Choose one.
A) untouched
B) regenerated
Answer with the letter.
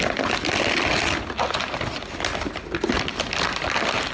A